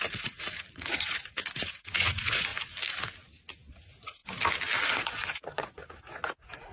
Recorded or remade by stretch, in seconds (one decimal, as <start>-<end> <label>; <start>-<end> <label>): 0.0-2.5 remade; 2.5-3.7 recorded; 3.7-4.2 remade; 4.2-4.9 recorded; 4.9-6.7 remade